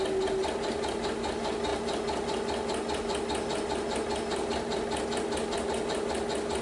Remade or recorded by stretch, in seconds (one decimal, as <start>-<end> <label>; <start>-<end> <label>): 0.0-6.6 recorded